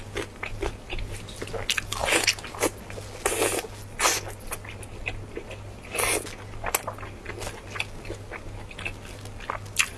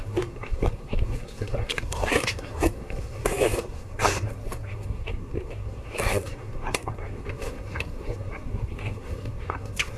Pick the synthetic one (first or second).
second